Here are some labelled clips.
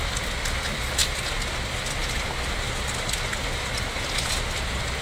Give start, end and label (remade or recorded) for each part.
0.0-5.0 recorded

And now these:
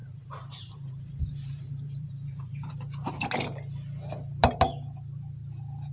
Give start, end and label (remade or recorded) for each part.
0.0-2.7 remade; 2.7-5.9 recorded

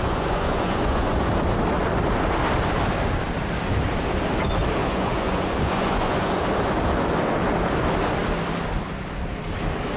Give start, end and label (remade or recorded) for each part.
0.0-1.3 remade; 1.3-4.8 recorded; 4.8-6.4 remade; 6.4-10.0 recorded

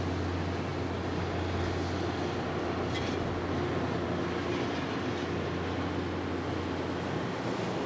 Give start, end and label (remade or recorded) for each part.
0.0-7.9 recorded